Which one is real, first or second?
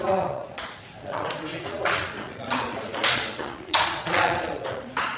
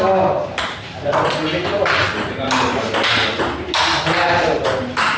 second